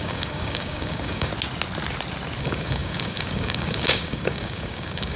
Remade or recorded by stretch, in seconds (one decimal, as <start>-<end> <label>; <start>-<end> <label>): 0.0-1.3 remade; 1.3-2.4 recorded; 2.4-5.2 remade